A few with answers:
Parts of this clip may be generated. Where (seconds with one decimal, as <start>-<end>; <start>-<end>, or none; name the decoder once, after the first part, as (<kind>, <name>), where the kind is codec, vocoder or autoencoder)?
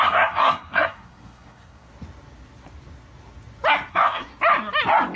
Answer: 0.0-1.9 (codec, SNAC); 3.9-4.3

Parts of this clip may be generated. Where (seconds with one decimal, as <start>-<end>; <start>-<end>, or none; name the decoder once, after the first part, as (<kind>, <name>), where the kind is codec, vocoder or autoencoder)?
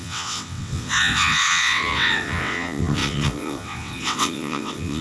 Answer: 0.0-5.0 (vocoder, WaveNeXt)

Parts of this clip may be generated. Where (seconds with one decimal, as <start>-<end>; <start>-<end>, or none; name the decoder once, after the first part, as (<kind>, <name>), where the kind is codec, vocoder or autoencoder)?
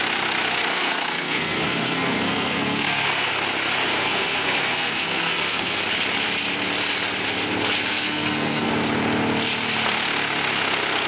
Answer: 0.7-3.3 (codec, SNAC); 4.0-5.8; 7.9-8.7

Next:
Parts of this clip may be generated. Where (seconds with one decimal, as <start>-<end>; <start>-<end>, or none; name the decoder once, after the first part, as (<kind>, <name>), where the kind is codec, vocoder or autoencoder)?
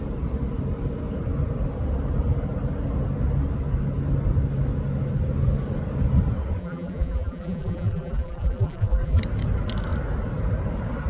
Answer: 6.6-9.2 (vocoder, BigVGAN v2)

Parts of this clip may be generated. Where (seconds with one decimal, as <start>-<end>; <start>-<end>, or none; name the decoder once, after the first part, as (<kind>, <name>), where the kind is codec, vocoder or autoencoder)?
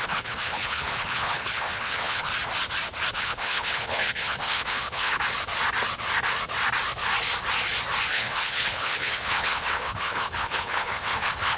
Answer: 0.0-2.3 (codec, HILCodec); 3.1-5.2; 8.1-11.6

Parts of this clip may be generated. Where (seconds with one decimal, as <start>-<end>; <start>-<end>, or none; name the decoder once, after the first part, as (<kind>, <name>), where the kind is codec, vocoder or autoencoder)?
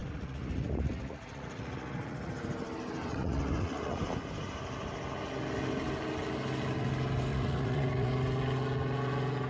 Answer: 0.0-2.3 (vocoder, Vocos); 3.1-4.0; 7.3-8.1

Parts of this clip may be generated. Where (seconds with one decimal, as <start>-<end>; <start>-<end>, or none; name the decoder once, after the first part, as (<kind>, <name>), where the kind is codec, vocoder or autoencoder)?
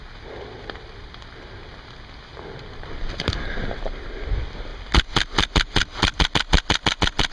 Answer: none